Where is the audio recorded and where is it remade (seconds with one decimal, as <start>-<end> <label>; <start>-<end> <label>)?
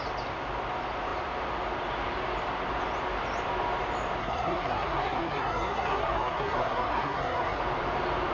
0.0-4.2 recorded; 4.2-7.6 remade; 7.6-8.3 recorded